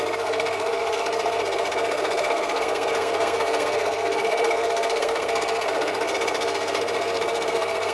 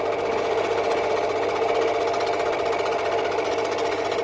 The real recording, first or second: second